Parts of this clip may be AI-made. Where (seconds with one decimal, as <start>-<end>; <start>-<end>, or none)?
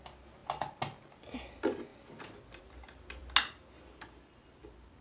none